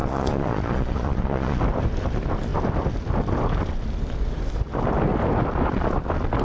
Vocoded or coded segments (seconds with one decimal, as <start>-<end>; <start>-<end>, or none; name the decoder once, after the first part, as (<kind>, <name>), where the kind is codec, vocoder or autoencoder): 0.0-1.6 (vocoder, Vocos)